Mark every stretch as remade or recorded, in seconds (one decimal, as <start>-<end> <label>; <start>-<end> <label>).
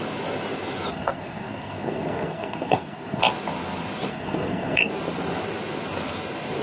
0.0-0.9 recorded; 0.9-3.2 remade; 3.2-4.1 recorded; 4.1-4.9 remade; 4.9-6.6 recorded